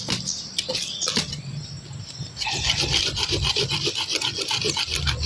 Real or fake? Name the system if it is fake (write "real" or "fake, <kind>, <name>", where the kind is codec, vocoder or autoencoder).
real